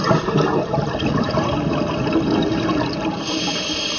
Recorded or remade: recorded